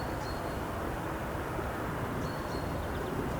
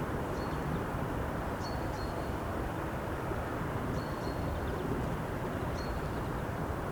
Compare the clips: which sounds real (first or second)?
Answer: first